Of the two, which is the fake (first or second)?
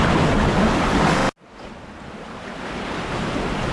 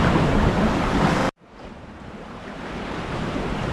second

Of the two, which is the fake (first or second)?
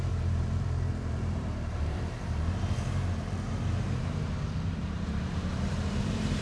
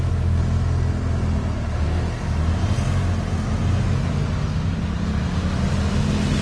first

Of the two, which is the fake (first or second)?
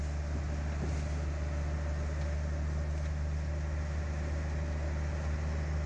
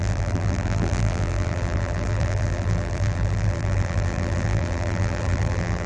second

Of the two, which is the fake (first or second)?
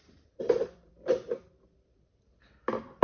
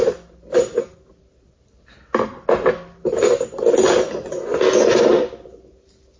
first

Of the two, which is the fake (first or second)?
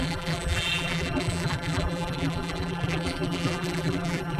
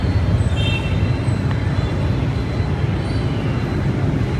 first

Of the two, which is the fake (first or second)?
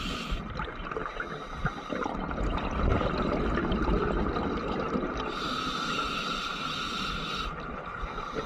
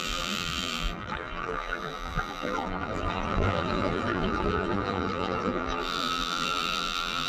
second